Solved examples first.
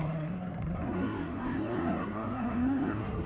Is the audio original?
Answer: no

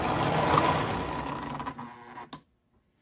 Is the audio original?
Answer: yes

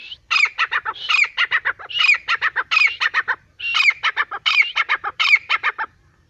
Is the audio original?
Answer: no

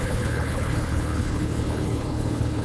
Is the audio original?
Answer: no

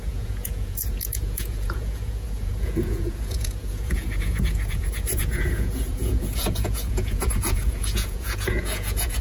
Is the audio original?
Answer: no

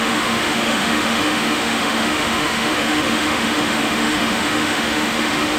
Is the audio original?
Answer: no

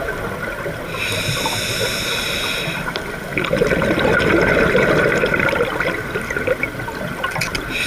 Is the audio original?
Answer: yes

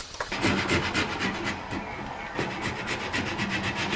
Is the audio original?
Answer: yes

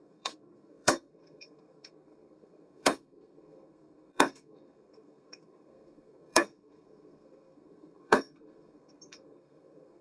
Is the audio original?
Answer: no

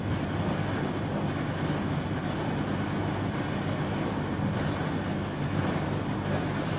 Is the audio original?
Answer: yes